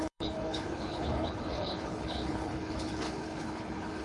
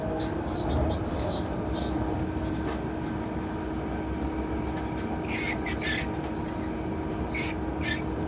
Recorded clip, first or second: second